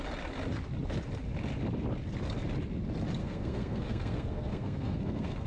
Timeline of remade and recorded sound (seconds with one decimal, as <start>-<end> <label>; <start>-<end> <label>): 0.0-3.2 recorded; 3.2-5.5 remade